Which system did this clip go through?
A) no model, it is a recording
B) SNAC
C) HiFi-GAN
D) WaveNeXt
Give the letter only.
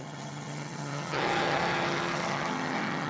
C